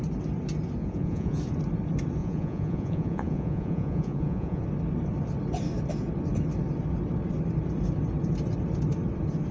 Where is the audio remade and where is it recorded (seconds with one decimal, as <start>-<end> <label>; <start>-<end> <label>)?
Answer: 0.0-0.8 recorded; 0.8-1.4 remade; 1.4-2.2 recorded; 2.2-4.6 remade; 4.6-9.5 recorded